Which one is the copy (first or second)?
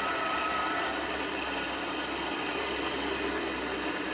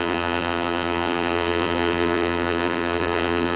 second